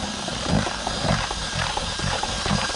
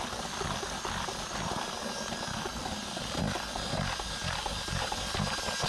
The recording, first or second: second